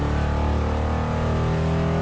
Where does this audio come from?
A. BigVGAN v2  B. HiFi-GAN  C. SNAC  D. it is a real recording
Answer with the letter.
D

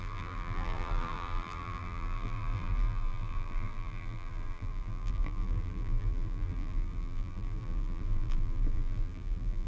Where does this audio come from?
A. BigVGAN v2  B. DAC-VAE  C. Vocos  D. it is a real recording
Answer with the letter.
A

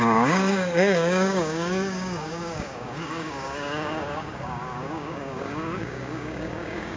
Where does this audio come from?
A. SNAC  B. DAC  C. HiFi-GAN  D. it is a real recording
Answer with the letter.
B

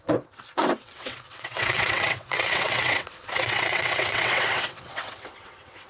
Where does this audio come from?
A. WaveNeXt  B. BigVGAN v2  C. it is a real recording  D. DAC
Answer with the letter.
A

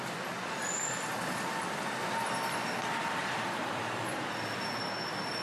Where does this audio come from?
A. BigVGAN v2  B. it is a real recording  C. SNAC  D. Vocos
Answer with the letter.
B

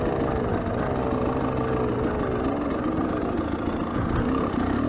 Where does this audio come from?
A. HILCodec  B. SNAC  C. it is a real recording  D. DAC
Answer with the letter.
C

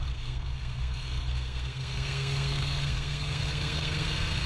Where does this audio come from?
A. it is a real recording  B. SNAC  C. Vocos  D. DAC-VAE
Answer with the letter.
B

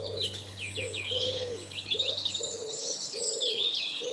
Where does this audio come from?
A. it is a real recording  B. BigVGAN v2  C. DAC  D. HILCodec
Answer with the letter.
D